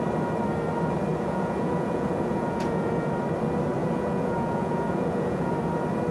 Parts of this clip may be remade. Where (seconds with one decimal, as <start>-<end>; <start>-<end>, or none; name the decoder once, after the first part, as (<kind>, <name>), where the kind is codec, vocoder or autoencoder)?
1.1-3.1 (vocoder, Vocos); 3.8-5.5